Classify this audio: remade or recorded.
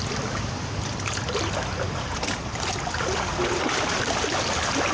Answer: recorded